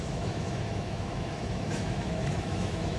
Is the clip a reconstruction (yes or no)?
yes